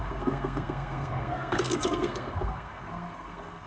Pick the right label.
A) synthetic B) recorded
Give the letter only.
A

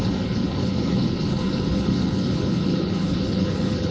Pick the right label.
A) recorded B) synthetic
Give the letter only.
B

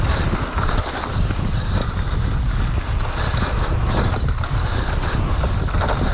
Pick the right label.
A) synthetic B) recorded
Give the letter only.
B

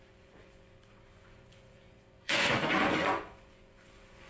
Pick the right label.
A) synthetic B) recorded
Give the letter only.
A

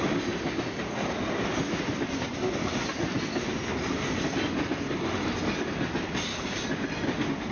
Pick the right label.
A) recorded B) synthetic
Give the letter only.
A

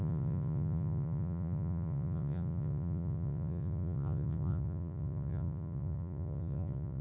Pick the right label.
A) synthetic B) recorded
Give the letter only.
A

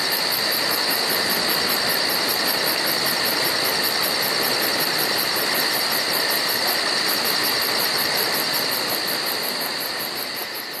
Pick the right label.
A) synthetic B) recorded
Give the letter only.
B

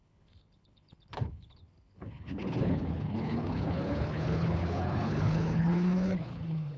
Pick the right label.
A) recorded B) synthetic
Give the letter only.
B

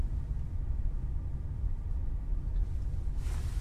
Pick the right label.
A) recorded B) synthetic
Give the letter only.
A